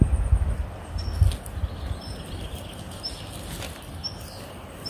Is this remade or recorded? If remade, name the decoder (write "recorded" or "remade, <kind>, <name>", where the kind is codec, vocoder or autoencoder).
recorded